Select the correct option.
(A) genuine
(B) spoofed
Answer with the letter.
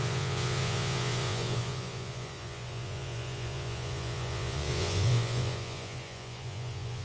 B